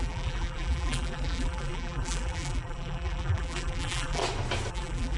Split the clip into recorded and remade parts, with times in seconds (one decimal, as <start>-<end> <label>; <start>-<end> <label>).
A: 0.0-4.2 remade; 4.2-4.7 recorded; 4.7-5.2 remade